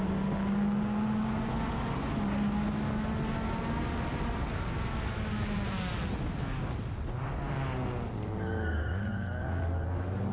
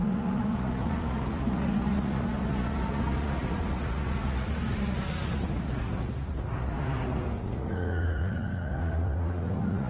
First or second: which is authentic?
first